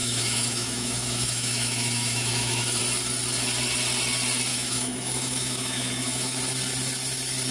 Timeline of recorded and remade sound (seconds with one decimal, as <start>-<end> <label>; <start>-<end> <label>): 0.0-2.8 remade; 2.8-4.5 recorded; 4.5-6.4 remade; 6.4-7.5 recorded